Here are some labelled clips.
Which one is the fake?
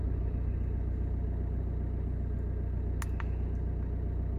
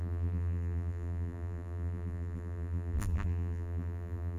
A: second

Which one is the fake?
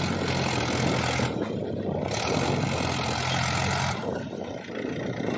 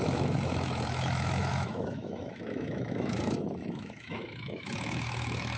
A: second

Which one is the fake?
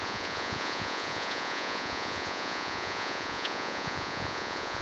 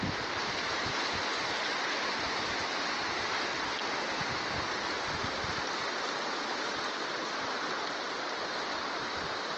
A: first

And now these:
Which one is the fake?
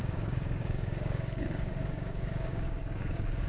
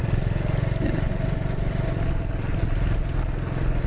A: first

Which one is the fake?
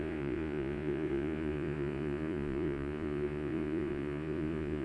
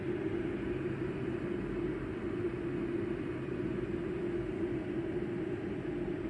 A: first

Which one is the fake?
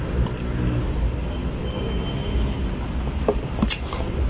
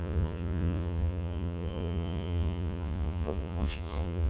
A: second